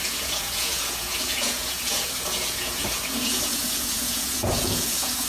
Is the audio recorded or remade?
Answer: remade